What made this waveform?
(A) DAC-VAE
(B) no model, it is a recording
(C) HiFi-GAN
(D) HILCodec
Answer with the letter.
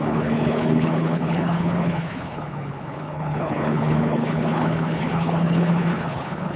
D